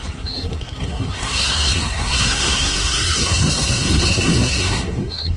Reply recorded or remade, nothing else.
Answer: remade